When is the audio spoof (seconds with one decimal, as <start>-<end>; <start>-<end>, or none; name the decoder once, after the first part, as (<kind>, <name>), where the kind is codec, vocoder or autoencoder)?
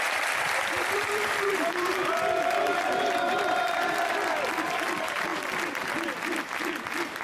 0.0-5.3 (vocoder, BigVGAN v2); 6.4-7.2